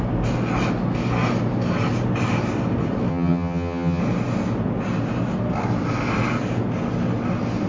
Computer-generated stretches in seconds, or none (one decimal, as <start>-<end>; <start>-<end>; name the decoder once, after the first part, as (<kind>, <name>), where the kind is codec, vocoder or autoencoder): 3.1-4.0 (vocoder, HiFi-GAN)